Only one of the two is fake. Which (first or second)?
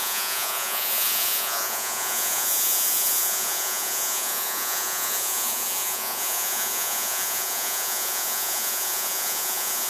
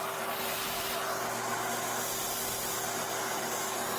first